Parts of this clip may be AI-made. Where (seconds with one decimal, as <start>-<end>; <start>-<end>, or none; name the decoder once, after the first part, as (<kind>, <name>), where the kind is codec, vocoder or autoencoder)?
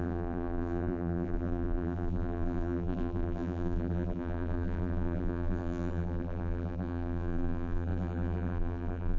0.0-9.2 (vocoder, BigVGAN v2)